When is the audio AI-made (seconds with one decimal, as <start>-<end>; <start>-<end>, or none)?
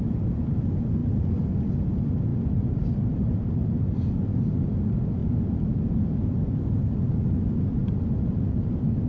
none